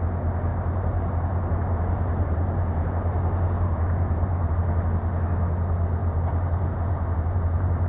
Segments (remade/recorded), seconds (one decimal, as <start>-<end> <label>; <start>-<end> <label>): 0.0-0.5 recorded; 0.5-4.6 remade; 4.6-6.0 recorded; 6.0-7.9 remade